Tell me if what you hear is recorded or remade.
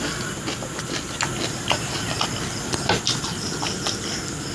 recorded